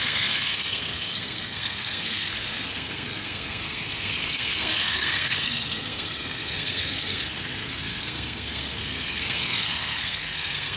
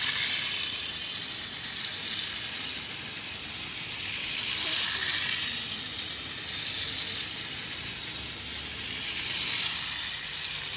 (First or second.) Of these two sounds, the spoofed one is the first